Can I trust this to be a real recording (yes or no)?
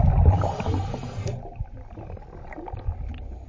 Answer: yes